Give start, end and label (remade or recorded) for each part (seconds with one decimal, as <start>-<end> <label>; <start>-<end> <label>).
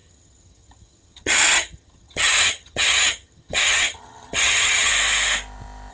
0.0-4.9 remade; 4.9-5.9 recorded